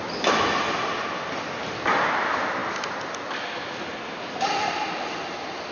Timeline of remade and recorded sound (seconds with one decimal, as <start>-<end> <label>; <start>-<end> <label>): 0.0-5.7 recorded